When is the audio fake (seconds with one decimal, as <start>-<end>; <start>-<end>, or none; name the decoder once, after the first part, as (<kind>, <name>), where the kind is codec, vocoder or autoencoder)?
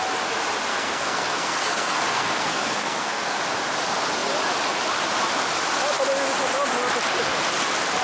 0.7-3.4 (codec, SNAC)